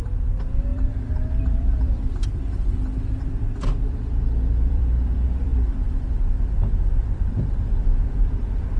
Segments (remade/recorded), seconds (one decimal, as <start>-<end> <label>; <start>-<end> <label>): 0.0-8.8 remade